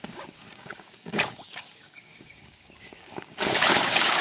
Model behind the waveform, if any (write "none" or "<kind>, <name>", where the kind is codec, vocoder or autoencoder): codec, DAC